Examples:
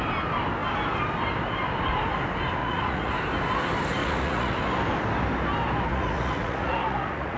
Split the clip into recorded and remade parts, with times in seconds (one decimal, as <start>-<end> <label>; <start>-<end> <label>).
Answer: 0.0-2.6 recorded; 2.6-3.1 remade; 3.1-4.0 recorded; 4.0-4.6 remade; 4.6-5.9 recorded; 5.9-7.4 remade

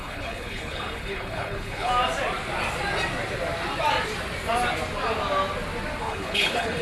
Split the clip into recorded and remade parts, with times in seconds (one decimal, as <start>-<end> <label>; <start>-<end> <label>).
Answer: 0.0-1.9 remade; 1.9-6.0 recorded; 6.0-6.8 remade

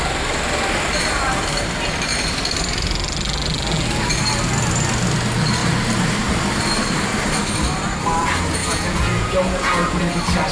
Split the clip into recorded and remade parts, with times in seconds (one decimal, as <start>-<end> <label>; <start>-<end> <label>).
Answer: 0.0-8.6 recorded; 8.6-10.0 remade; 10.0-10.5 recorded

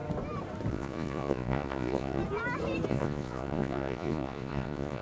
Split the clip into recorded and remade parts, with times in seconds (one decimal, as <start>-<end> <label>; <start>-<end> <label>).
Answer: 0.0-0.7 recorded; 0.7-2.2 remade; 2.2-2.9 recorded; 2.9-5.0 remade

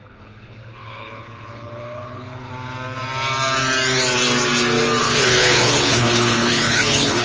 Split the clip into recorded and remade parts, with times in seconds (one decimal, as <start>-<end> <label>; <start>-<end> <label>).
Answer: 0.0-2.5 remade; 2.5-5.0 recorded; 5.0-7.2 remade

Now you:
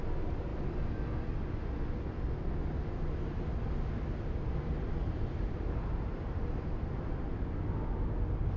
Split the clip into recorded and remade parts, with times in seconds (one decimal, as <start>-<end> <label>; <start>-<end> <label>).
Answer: 0.0-8.6 recorded

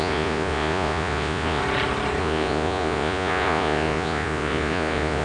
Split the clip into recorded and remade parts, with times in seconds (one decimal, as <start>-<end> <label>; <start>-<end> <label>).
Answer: 0.0-1.6 remade; 1.6-2.2 recorded; 2.2-5.2 remade